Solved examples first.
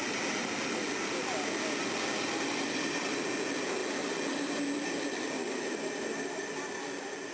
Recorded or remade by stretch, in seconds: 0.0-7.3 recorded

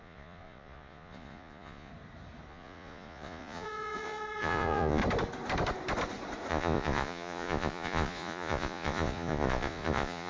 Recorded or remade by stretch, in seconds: 0.0-1.9 remade; 1.9-2.5 recorded; 2.5-5.0 remade; 5.0-6.5 recorded; 6.5-10.3 remade

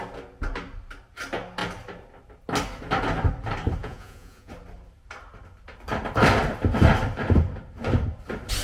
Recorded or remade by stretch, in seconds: 0.0-3.8 recorded; 3.8-4.5 remade; 4.5-8.6 recorded

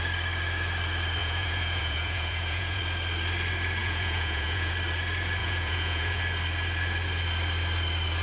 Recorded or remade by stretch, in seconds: 0.0-1.2 recorded; 1.2-2.8 remade; 2.8-3.8 recorded; 3.8-4.7 remade; 4.7-5.4 recorded; 5.4-6.2 remade; 6.2-8.2 recorded

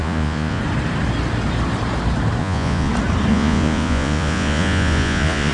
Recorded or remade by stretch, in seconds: 0.0-0.6 remade; 0.6-2.4 recorded; 2.4-2.9 remade; 2.9-3.3 recorded; 3.3-5.5 remade

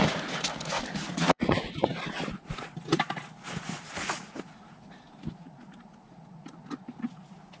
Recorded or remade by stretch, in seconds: 0.0-1.0 recorded; 1.0-2.0 remade; 2.0-7.6 recorded

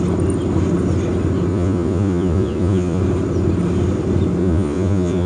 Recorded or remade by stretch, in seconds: 0.0-1.5 recorded; 1.5-3.0 remade; 3.0-4.4 recorded; 4.4-5.3 remade

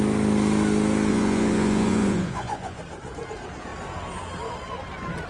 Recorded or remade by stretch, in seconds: 0.0-1.1 recorded; 1.1-2.8 remade; 2.8-5.3 recorded